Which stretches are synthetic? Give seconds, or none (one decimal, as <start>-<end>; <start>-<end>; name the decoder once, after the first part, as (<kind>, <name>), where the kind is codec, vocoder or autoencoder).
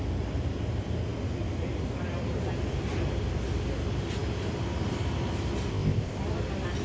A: 5.7-6.2 (codec, ZipCodec)